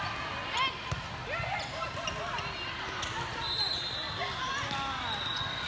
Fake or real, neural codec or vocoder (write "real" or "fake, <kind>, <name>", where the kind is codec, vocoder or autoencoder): real